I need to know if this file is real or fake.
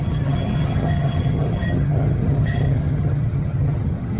fake